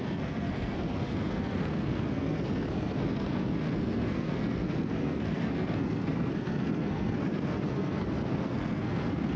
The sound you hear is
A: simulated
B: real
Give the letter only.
A